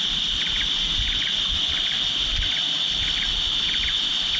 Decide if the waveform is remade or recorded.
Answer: recorded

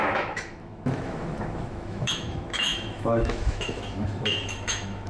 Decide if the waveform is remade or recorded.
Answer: remade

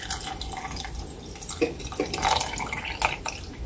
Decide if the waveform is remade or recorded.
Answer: recorded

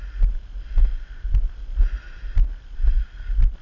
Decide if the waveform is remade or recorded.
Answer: recorded